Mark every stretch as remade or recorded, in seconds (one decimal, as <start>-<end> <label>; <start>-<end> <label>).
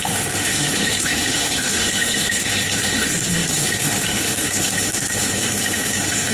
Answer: 0.0-6.3 remade